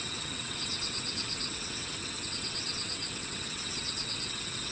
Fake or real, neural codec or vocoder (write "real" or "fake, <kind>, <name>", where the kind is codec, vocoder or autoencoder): fake, vocoder, WaveNeXt